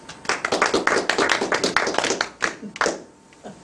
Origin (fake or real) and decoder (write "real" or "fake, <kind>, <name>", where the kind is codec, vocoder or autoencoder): real